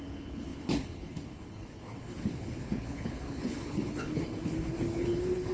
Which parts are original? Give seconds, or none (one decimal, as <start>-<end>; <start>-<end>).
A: none